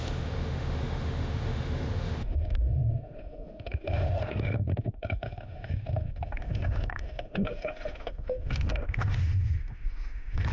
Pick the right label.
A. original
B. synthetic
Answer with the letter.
B